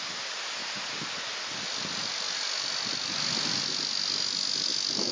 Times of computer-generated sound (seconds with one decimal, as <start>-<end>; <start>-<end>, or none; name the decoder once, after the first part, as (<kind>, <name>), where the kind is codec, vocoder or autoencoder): none